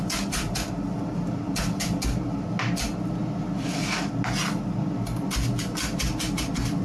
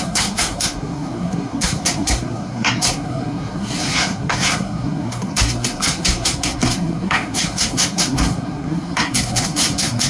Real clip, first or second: first